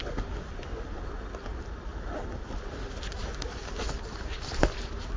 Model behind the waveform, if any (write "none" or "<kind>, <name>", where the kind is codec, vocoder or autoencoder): none